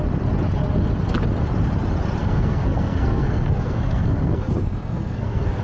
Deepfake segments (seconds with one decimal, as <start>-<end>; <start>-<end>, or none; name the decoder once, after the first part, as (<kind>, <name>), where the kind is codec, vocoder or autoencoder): 2.2-5.6 (codec, SNAC)